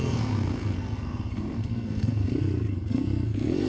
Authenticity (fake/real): fake